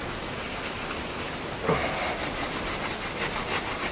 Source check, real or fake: real